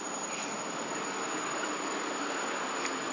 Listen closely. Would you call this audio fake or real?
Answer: real